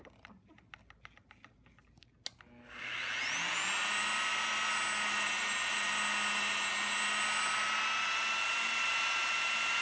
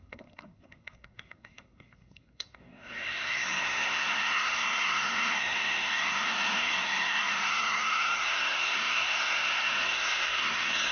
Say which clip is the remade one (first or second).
second